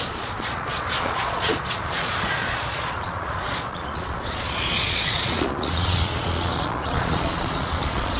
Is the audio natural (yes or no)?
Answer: no